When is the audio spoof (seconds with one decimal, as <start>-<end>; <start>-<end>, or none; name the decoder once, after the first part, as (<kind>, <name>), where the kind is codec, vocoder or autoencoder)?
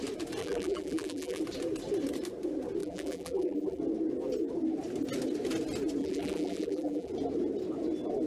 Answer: 0.4-1.4 (vocoder, BigVGAN v2); 2.8-3.8; 6.0-7.1